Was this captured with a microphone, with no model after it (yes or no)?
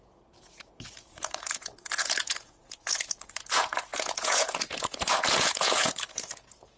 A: no